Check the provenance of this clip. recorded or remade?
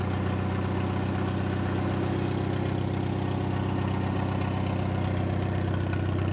recorded